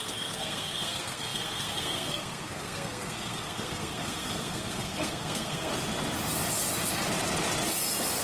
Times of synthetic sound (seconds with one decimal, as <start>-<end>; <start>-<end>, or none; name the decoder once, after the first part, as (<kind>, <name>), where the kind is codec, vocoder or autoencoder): 0.0-5.7 (codec, SNAC)